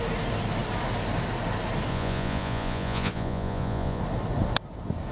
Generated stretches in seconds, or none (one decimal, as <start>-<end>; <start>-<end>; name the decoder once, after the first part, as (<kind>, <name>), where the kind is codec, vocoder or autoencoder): 1.9-4.0 (vocoder, Vocos)